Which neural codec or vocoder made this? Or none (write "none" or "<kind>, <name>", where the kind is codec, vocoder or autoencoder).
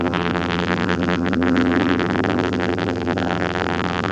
vocoder, BigVGAN v2